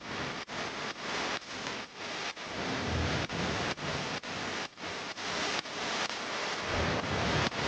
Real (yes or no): yes